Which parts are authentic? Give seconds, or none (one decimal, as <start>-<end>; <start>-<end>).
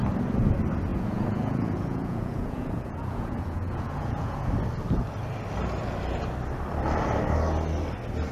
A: 0.0-0.9; 4.5-8.3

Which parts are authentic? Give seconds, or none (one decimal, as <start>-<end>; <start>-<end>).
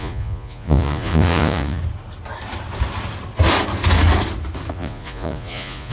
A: 1.8-4.7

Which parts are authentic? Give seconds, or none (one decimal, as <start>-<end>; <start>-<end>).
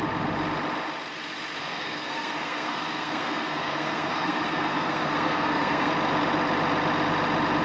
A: 0.0-1.6; 5.9-7.6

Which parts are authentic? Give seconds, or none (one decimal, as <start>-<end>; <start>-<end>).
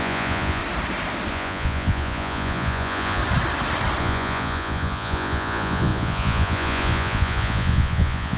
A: 0.6-1.3; 3.2-4.0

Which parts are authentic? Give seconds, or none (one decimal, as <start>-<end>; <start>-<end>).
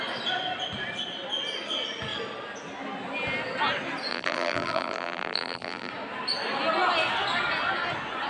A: 0.0-4.1; 5.9-8.3